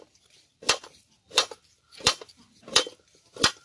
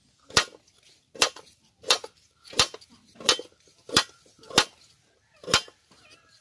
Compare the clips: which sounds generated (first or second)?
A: first